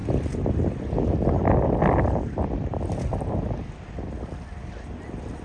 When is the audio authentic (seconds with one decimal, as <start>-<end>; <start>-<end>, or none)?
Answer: 0.0-5.4